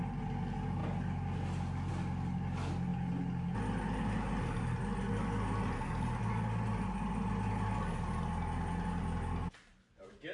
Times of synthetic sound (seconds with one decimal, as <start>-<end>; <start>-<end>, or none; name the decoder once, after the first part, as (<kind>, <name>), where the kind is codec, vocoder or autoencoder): none